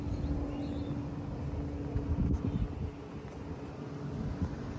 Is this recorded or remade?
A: recorded